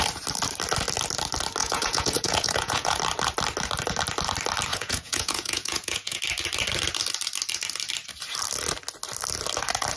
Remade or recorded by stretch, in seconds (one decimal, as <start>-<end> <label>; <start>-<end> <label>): 0.0-1.6 recorded; 1.6-3.0 remade; 3.0-4.7 recorded; 4.7-6.2 remade; 6.2-10.0 recorded